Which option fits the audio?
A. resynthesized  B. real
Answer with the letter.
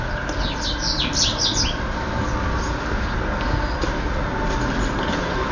B